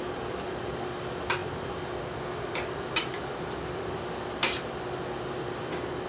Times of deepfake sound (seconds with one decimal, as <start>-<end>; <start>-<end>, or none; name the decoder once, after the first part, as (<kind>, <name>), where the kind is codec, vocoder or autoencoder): none